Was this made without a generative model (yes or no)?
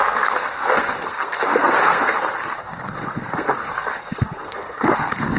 no